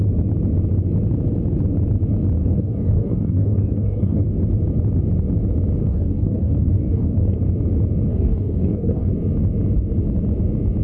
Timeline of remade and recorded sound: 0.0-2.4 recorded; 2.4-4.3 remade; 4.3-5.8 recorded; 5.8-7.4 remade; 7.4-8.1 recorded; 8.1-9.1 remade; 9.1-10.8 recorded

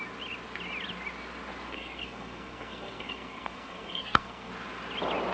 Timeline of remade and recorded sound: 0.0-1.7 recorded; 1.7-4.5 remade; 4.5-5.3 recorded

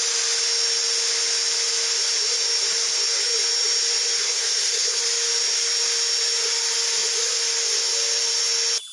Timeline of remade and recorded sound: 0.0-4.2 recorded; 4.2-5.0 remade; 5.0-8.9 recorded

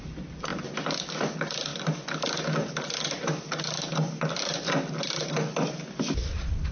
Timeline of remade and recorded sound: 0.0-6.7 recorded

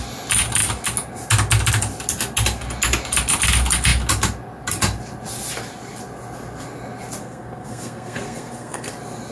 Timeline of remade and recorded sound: 0.0-7.2 recorded; 7.2-8.9 remade; 8.9-9.3 recorded

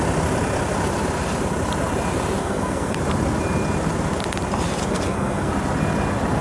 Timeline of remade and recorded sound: 0.0-2.4 recorded; 2.4-3.0 remade; 3.0-4.8 recorded; 4.8-5.5 remade; 5.5-6.4 recorded

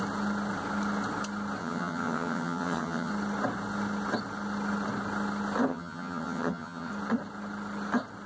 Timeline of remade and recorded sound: 0.0-1.6 recorded; 1.6-3.1 remade; 3.1-5.7 recorded; 5.7-6.9 remade; 6.9-8.3 recorded